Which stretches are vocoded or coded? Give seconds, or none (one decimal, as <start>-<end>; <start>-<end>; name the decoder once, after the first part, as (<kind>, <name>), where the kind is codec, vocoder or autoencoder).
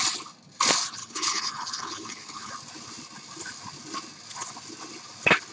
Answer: 1.0-2.5 (codec, HILCodec)